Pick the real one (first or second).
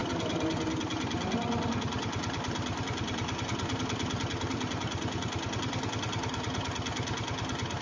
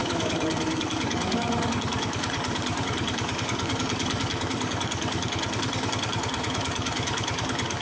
first